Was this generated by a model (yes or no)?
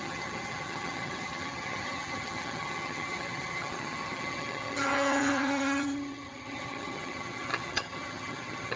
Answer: yes